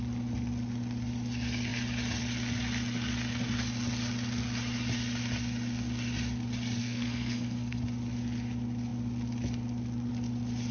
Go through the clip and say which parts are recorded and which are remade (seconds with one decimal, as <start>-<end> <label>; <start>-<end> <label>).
0.0-6.8 recorded; 6.8-7.8 remade; 7.8-10.7 recorded